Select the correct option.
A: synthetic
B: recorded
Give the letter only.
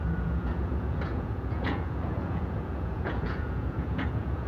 A